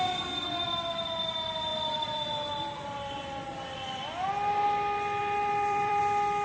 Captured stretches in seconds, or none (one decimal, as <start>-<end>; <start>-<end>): 0.0-1.7; 2.3-5.2; 6.0-6.4